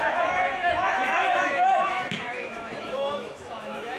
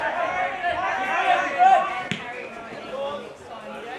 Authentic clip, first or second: second